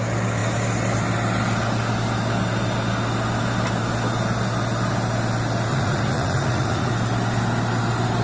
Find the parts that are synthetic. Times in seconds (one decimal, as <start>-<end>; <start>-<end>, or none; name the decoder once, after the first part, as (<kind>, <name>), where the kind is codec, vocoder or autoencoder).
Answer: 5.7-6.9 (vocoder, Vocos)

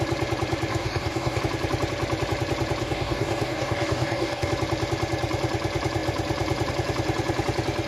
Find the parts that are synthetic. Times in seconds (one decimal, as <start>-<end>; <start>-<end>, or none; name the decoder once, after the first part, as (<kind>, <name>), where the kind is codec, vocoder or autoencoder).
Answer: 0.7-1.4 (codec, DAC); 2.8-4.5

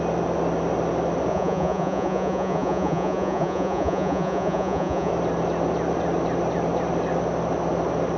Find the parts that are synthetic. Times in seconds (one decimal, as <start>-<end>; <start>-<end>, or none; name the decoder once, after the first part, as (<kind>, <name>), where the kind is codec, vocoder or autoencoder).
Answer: 1.3-5.1 (vocoder, Vocos)